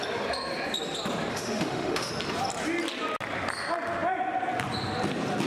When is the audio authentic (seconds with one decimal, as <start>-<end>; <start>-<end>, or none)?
0.0-1.3; 2.1-5.5